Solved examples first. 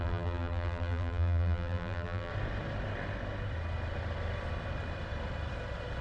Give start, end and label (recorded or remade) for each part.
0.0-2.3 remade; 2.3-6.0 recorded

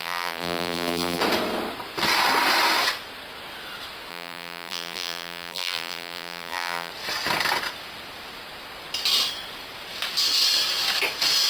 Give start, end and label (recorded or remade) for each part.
0.0-1.2 remade; 1.2-4.1 recorded; 4.1-6.9 remade; 6.9-11.5 recorded